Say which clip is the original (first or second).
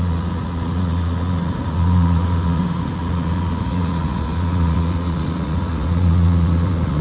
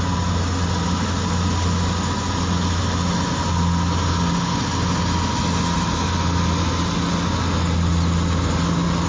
second